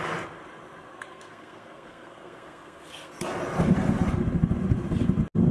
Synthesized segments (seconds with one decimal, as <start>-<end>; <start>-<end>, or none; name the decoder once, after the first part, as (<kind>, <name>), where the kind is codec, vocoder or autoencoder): 0.9-3.1 (codec, SNAC)